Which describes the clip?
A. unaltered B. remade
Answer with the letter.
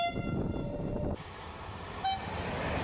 B